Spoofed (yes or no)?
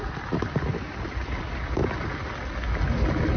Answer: no